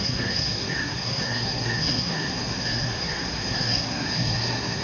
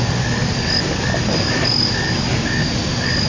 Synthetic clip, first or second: first